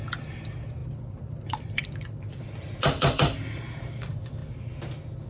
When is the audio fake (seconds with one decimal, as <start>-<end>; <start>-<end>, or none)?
0.8-3.6